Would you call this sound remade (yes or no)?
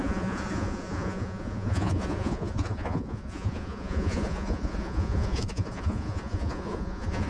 yes